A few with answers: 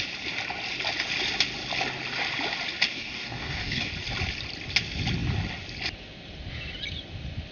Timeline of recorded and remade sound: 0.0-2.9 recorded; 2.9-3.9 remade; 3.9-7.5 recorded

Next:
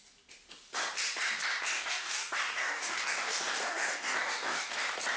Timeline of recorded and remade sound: 0.0-1.7 recorded; 1.7-4.8 remade; 4.8-5.2 recorded

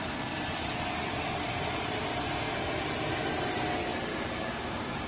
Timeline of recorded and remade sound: 0.0-4.1 recorded; 4.1-5.1 remade

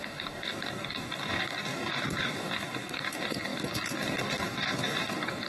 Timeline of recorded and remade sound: 0.0-5.5 remade